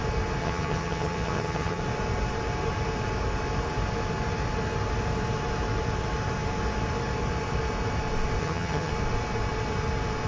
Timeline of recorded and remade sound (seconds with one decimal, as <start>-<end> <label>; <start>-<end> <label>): 0.0-0.4 recorded; 0.4-1.8 remade; 1.8-8.4 recorded; 8.4-8.9 remade; 8.9-10.3 recorded